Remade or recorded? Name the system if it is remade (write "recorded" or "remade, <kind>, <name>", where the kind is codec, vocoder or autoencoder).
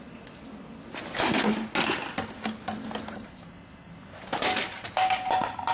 recorded